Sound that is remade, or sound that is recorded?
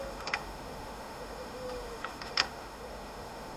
remade